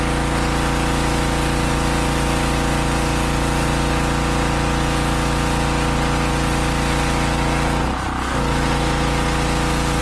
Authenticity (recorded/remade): recorded